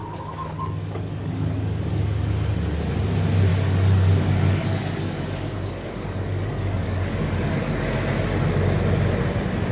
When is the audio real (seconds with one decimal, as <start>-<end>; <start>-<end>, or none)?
2.3-3.5; 7.9-9.7